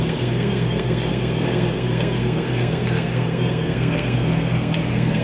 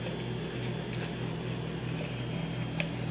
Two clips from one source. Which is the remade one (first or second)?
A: first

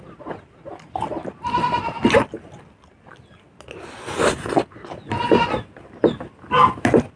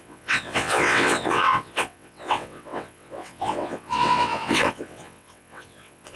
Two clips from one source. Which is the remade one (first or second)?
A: second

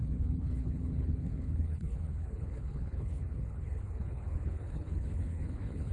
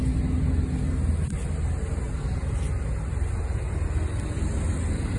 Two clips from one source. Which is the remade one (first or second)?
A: first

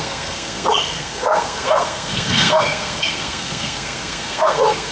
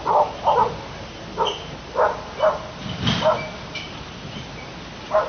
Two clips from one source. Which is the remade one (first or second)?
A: first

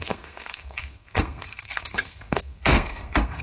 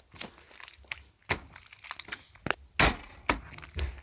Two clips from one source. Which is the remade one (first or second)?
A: first